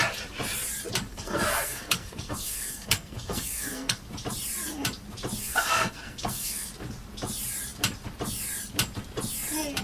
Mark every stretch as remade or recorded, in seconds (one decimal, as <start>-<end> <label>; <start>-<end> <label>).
0.0-1.1 recorded; 1.1-4.0 remade; 4.0-5.4 recorded; 5.4-6.7 remade; 6.7-9.8 recorded